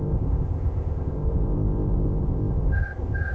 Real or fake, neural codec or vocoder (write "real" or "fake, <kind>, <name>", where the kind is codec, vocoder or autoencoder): fake, codec, ZipCodec